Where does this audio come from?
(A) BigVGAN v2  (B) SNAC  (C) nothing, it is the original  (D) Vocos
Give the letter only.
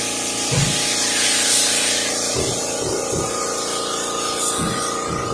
C